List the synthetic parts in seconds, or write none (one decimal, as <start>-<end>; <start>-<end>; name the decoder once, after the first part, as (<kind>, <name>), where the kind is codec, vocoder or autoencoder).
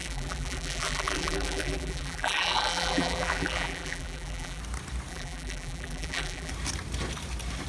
0.0-4.6 (vocoder, BigVGAN v2); 5.1-6.5